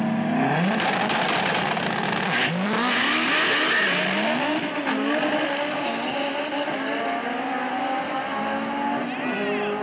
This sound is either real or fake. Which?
real